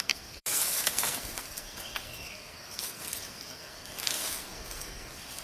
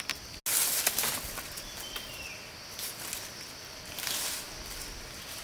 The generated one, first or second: first